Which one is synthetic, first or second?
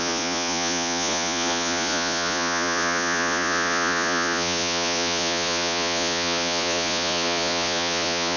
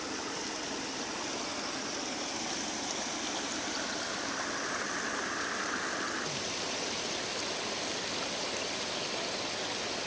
first